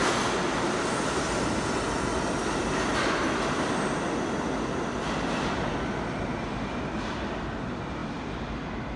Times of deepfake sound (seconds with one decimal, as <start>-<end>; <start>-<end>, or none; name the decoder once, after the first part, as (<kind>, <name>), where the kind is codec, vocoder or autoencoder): 8.0-8.6 (vocoder, BigVGAN v2)